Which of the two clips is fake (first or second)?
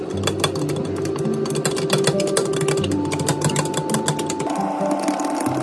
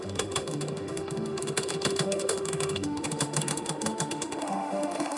second